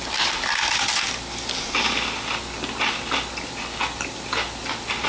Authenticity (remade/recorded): recorded